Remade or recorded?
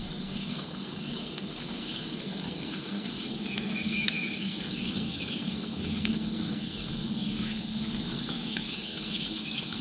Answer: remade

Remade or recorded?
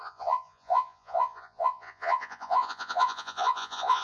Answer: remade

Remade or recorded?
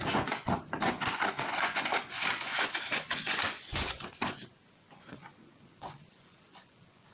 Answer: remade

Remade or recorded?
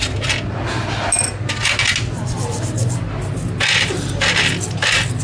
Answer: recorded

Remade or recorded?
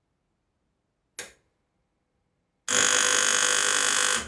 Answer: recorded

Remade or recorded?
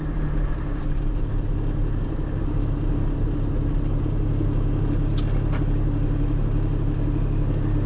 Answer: recorded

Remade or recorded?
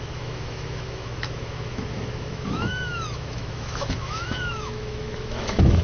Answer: remade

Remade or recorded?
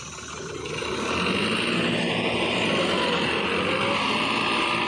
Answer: recorded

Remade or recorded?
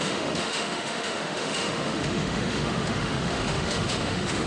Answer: remade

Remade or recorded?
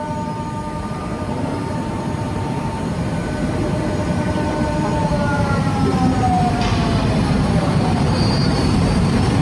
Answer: remade